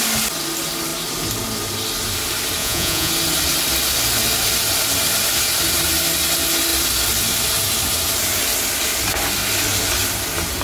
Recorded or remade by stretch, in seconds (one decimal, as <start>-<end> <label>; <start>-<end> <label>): 0.0-2.6 recorded; 2.6-3.1 remade; 3.1-10.6 recorded